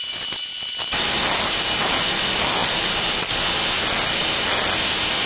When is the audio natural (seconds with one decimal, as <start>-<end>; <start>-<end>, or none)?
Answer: 0.0-5.3